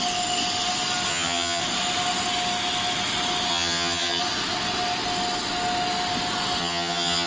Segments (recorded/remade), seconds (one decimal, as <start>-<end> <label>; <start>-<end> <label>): 0.0-1.1 recorded; 1.1-1.6 remade; 1.6-3.5 recorded; 3.5-4.2 remade; 4.2-6.6 recorded; 6.6-7.3 remade